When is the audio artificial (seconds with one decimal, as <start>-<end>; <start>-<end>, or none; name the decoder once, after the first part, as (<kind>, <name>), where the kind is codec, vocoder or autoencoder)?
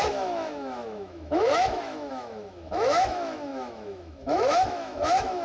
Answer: 0.0-5.4 (autoencoder, DAC-VAE)